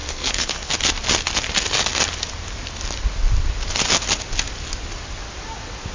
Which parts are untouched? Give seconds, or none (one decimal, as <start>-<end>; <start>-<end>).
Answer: 0.7-5.9